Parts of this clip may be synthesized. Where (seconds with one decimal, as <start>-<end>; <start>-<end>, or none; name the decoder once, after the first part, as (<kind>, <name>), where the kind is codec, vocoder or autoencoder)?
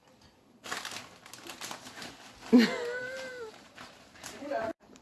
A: 3.0-5.0 (vocoder, BigVGAN v2)